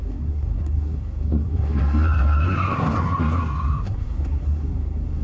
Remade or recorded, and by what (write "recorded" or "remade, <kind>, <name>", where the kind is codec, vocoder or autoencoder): remade, codec, SNAC